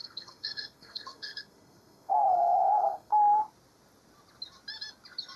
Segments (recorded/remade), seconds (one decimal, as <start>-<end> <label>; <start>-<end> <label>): 0.0-3.2 remade; 3.2-5.4 recorded